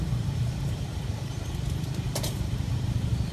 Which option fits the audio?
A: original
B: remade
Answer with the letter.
B